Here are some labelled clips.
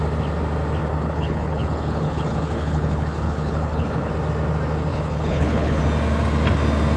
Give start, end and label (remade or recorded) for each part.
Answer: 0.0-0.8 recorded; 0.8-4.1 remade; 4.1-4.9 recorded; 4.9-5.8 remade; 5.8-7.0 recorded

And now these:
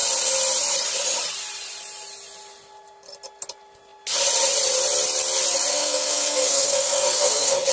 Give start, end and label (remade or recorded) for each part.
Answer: 0.0-5.7 recorded; 5.7-7.7 remade